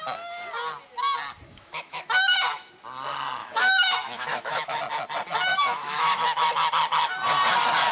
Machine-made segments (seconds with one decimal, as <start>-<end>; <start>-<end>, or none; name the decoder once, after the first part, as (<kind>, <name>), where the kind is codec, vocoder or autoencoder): 1.5-2.7 (autoencoder, DAC-VAE); 3.4-4.8; 5.5-6.7